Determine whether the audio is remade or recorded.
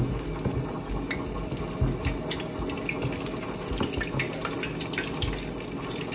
recorded